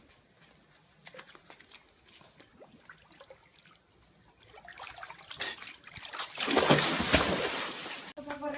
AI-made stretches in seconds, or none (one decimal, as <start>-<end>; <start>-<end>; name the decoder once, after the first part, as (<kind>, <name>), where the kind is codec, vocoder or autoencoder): none